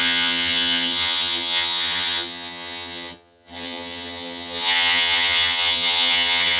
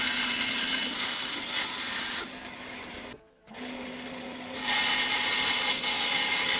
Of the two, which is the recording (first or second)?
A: second